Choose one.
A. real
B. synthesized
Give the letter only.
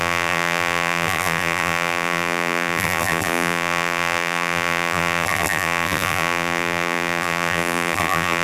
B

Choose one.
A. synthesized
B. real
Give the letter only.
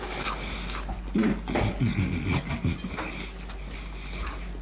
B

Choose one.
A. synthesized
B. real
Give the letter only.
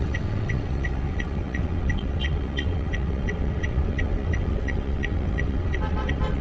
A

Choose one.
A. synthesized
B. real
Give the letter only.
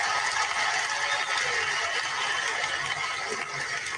B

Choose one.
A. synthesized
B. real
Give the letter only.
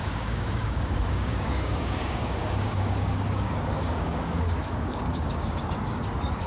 A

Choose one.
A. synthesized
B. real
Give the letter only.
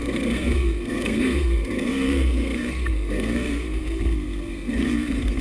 A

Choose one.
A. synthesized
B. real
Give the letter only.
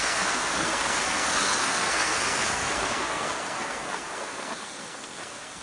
A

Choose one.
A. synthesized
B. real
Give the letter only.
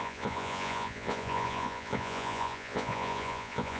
A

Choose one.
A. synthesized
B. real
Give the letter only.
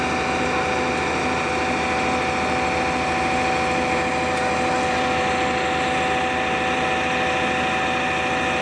B